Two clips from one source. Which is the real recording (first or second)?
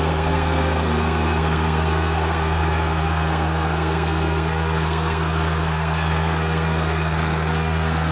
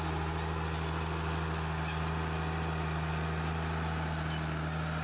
second